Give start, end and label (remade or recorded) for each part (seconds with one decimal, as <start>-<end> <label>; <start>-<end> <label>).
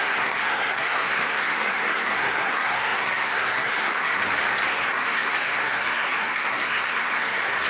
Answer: 0.0-4.2 remade; 4.2-4.7 recorded; 4.7-7.7 remade